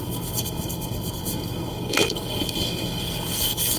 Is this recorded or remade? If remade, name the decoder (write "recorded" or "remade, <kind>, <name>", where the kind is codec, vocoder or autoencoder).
remade, codec, SNAC